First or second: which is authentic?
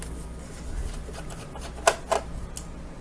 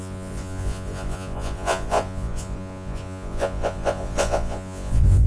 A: first